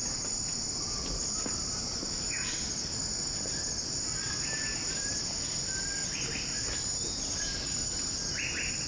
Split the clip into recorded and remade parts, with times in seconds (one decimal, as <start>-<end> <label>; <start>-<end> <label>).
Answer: 0.0-0.9 recorded; 0.9-2.2 remade; 2.2-4.7 recorded; 4.7-5.4 remade; 5.4-8.9 recorded